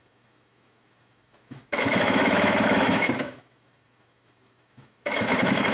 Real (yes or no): no